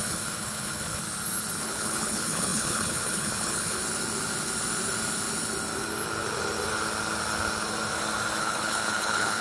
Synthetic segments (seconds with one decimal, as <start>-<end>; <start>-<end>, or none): 0.0-1.0; 1.6-3.8; 8.4-9.4